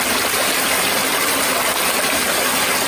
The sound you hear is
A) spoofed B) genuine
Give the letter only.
B